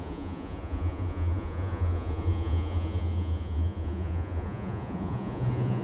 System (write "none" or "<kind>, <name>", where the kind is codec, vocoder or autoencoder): vocoder, Vocos